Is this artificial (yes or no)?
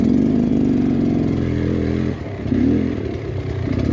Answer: no